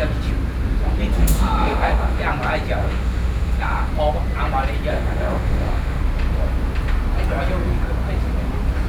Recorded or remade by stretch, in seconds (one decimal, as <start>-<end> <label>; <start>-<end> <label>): 0.0-1.2 recorded; 1.2-2.2 remade; 2.2-2.8 recorded; 2.8-3.9 remade; 3.9-4.9 recorded; 4.9-6.0 remade; 6.0-8.9 recorded